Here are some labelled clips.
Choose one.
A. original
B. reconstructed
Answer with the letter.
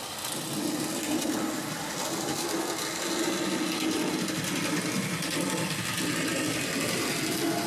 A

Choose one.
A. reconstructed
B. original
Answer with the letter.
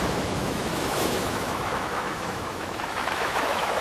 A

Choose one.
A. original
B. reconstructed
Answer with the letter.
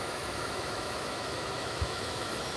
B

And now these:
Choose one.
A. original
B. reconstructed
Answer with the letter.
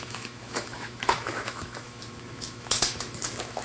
B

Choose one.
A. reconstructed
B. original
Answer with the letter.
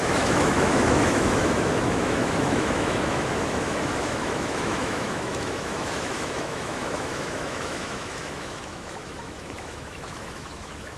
A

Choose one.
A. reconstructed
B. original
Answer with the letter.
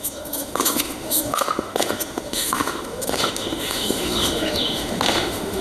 A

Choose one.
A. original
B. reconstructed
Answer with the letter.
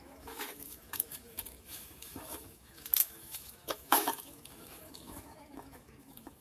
B